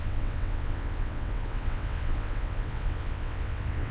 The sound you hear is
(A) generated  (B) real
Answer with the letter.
A